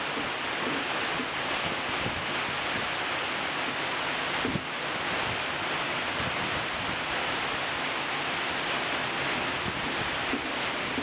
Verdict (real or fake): real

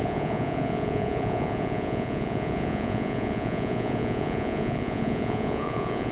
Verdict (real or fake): fake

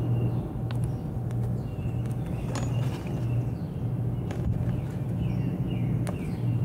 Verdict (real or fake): real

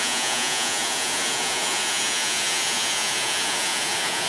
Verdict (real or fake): fake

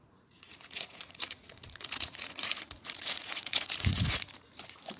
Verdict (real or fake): fake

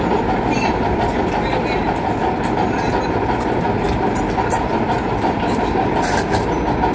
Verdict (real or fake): real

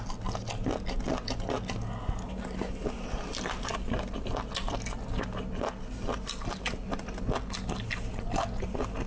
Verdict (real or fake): real